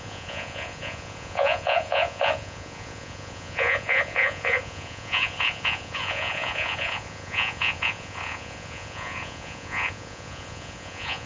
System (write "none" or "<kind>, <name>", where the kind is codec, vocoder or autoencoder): vocoder, Vocos